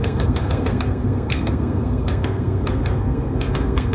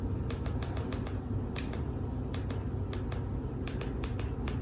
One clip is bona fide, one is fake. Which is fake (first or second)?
first